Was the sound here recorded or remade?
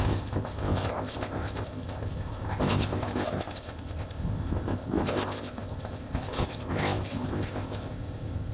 remade